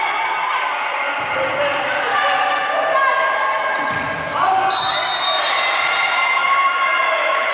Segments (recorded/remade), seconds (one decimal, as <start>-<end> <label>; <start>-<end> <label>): 0.0-6.4 recorded; 6.4-7.5 remade